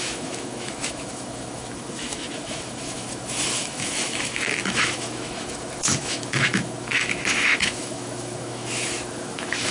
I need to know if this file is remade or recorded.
remade